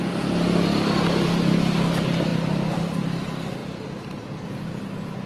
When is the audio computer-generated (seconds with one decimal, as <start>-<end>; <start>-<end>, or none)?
2.3-3.0; 3.6-4.2